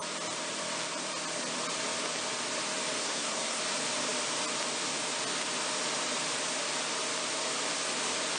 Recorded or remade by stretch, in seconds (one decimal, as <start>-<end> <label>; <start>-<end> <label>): 0.0-3.0 recorded; 3.0-3.6 remade; 3.6-8.4 recorded